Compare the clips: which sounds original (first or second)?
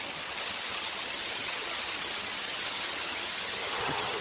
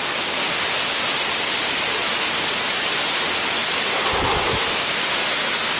second